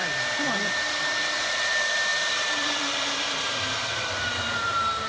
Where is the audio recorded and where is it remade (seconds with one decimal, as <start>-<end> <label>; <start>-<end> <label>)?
0.0-0.7 recorded; 0.7-5.1 remade